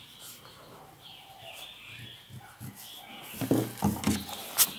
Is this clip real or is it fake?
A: real